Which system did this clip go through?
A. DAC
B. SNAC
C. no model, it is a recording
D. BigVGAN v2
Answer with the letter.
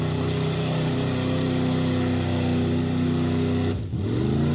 C